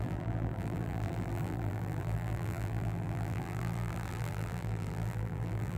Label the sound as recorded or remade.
remade